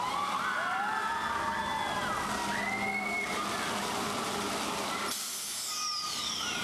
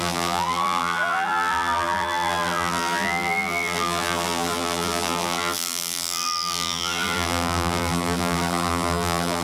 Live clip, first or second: first